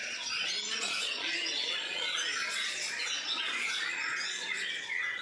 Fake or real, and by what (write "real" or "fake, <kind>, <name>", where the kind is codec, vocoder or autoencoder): fake, vocoder, Vocos